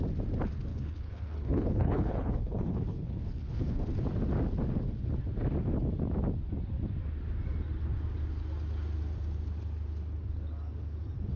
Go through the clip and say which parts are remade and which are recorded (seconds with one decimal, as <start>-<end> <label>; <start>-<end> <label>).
0.0-0.7 recorded; 0.7-3.8 remade; 3.8-11.4 recorded